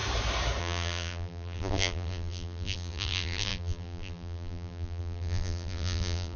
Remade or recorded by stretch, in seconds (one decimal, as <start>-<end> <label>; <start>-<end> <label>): 0.0-0.6 recorded; 0.6-6.4 remade